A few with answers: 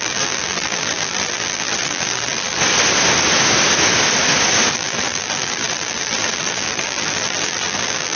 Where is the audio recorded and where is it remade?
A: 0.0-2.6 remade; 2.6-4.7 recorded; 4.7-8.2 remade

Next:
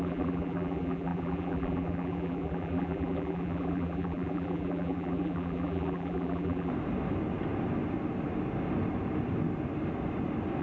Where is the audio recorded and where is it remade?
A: 0.0-6.7 remade; 6.7-10.6 recorded

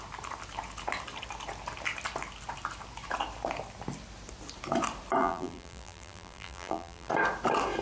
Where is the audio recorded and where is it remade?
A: 0.0-5.2 recorded; 5.2-7.1 remade; 7.1-7.8 recorded

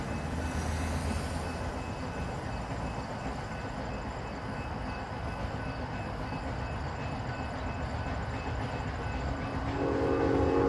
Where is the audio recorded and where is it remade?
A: 0.0-10.7 recorded

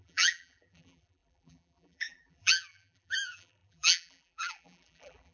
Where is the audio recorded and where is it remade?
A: 0.0-5.3 remade

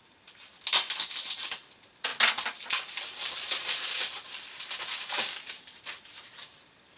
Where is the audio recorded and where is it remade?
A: 0.0-0.5 remade; 0.5-1.2 recorded; 1.2-2.1 remade; 2.1-2.9 recorded; 2.9-7.0 remade

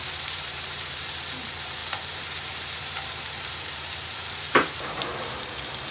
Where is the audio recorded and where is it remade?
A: 0.0-5.1 remade; 5.1-5.9 recorded

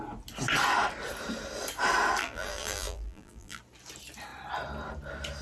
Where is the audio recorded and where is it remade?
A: 0.0-2.2 recorded; 2.2-3.6 remade; 3.6-5.4 recorded